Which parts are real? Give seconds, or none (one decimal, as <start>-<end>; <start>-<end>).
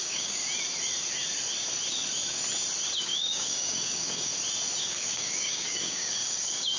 0.4-3.0; 4.3-4.8